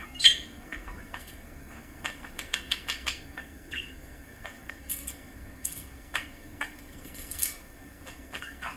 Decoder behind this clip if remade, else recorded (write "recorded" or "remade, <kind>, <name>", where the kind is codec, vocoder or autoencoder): remade, codec, SNAC